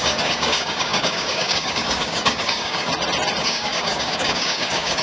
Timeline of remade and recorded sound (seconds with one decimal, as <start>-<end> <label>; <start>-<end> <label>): 0.0-2.9 remade; 2.9-3.4 recorded; 3.4-5.0 remade